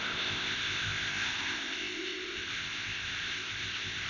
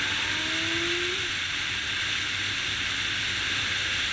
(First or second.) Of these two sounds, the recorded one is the second